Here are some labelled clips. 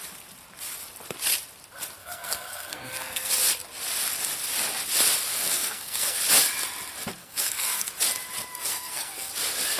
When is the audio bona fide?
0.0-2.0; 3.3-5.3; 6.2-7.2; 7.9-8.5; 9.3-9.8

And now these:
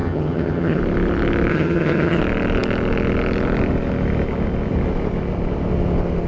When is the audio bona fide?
0.8-1.5; 2.2-6.3